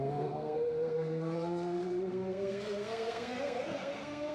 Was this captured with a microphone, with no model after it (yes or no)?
no